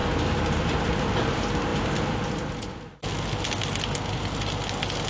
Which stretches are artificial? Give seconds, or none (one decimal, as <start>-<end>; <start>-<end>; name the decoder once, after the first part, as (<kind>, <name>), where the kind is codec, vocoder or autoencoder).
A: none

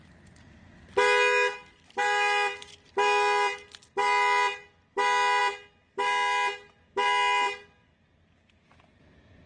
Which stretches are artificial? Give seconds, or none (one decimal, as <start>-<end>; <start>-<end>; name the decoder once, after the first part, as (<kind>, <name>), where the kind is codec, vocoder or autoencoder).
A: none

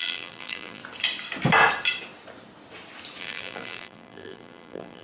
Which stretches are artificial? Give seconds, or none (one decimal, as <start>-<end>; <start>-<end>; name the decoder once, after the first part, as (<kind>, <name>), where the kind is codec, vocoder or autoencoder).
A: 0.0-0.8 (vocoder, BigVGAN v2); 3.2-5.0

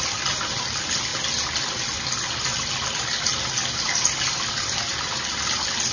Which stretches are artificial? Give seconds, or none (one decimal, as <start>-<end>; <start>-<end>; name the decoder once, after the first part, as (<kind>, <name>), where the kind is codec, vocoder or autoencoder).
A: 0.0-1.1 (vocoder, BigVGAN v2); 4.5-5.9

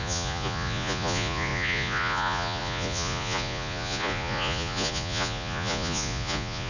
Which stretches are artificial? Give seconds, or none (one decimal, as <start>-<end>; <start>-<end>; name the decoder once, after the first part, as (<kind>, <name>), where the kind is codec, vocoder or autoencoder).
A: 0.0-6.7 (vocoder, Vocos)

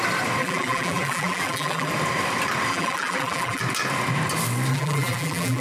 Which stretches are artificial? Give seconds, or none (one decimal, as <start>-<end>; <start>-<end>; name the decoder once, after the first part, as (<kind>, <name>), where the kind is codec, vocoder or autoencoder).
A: 0.4-1.9 (vocoder, BigVGAN v2); 2.7-3.6; 4.7-5.6

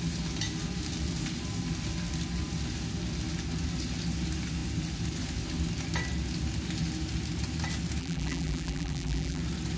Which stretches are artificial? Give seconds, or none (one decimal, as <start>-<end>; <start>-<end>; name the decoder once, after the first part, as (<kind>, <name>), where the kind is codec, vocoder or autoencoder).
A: 8.0-9.4 (vocoder, BigVGAN v2)